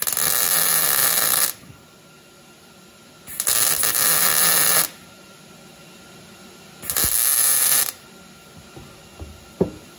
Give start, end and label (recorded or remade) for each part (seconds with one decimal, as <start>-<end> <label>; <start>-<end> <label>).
0.0-1.0 recorded; 1.0-3.1 remade; 3.1-7.4 recorded; 7.4-8.0 remade; 8.0-10.0 recorded